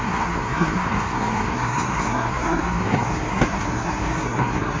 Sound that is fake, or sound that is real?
fake